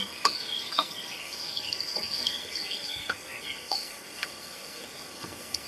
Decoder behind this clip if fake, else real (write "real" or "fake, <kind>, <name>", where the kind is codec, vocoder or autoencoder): fake, codec, SNAC